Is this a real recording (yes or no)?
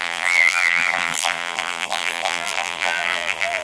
no